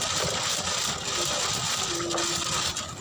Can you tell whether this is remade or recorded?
recorded